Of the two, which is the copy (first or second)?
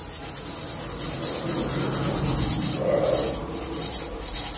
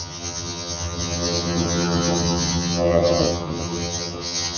second